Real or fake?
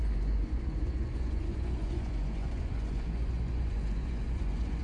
fake